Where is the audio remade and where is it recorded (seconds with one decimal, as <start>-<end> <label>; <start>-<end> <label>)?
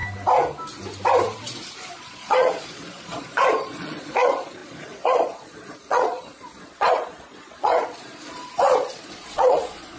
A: 0.0-1.9 recorded; 1.9-10.0 remade